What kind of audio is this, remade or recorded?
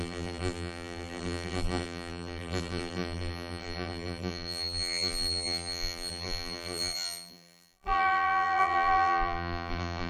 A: remade